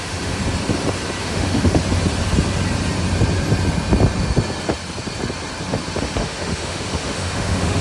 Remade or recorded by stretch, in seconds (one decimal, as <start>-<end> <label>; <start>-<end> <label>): 0.0-0.4 remade; 0.4-1.2 recorded; 1.2-1.8 remade; 1.8-6.2 recorded; 6.2-7.8 remade